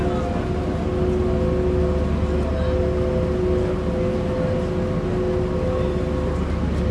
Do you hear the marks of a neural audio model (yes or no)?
no